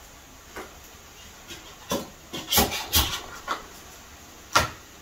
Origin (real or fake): real